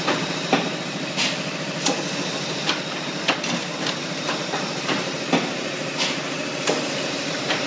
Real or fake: real